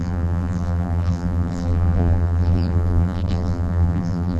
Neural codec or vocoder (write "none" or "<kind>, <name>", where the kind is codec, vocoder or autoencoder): vocoder, BigVGAN v2